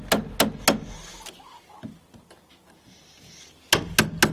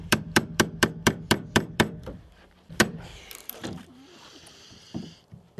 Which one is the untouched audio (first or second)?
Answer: first